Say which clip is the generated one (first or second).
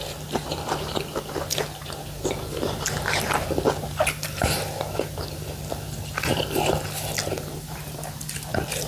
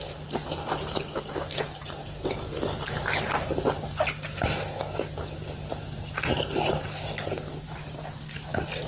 first